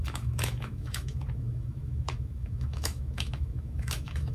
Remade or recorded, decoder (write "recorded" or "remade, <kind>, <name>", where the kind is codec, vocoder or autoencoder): remade, autoencoder, DAC-VAE